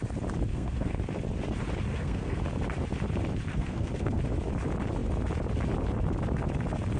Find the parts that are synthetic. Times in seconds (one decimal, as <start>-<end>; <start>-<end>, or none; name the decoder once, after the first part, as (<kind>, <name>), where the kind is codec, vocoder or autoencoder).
0.5-1.0 (codec, SNAC); 1.9-2.4; 3.5-4.2